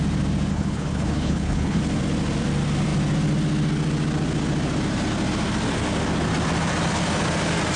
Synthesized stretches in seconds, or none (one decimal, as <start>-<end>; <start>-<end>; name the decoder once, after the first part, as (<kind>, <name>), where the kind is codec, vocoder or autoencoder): 0.5-1.8 (codec, HILCodec)